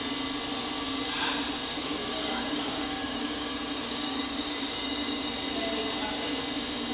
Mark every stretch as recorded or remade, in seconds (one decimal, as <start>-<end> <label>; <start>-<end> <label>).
0.0-1.8 recorded; 1.8-5.3 remade; 5.3-6.9 recorded